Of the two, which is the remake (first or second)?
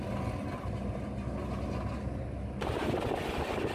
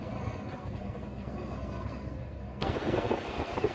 second